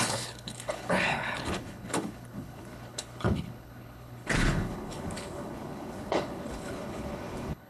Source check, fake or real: fake